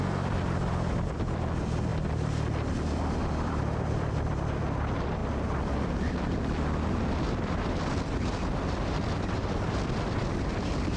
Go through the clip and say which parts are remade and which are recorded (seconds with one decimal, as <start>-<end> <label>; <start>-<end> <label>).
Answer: 0.0-1.9 remade; 1.9-2.7 recorded; 2.7-5.2 remade; 5.2-6.9 recorded; 6.9-11.0 remade